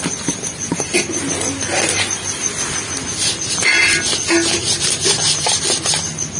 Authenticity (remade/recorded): recorded